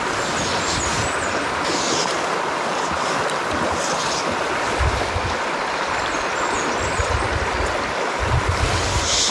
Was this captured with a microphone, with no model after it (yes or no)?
yes